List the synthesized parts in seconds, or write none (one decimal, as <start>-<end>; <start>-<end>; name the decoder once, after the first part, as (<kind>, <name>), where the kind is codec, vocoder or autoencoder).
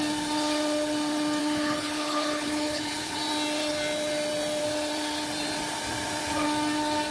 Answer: 1.4-3.2 (codec, HILCodec)